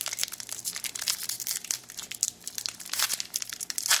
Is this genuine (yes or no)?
no